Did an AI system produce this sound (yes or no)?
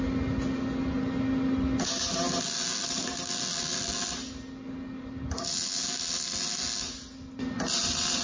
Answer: no